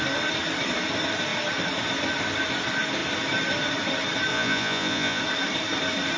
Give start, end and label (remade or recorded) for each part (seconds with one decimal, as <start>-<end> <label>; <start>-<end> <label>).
0.0-4.3 recorded; 4.3-5.2 remade; 5.2-6.2 recorded